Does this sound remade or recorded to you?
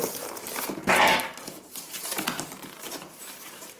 remade